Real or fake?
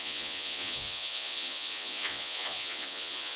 fake